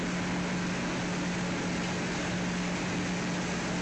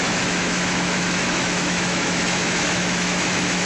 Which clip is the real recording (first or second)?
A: first